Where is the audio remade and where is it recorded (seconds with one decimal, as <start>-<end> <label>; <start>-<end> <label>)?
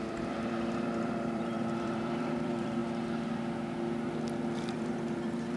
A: 0.0-2.8 remade; 2.8-4.7 recorded; 4.7-5.6 remade